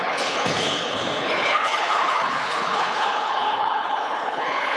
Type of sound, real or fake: fake